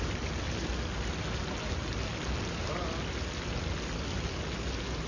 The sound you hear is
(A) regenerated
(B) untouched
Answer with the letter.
B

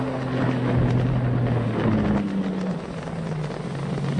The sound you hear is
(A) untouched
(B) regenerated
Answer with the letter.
A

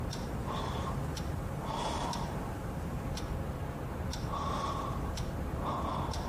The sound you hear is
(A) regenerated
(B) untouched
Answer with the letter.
A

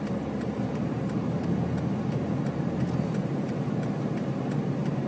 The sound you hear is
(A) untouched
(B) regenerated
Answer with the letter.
B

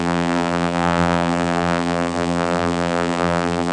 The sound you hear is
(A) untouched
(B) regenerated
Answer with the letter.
B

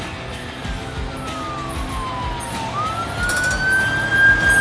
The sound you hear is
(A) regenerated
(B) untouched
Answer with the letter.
B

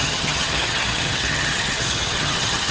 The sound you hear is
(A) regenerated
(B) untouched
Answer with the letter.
A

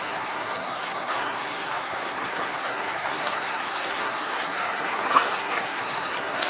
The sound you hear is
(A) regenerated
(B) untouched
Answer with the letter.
A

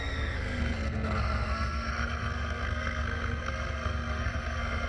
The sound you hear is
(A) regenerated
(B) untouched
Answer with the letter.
A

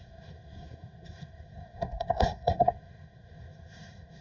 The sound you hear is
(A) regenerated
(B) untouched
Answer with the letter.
A